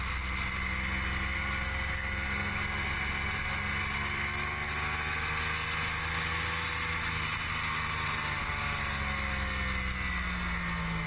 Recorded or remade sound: recorded